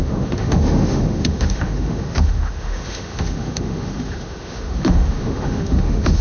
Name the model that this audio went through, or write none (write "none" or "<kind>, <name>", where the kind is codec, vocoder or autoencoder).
autoencoder, DAC-VAE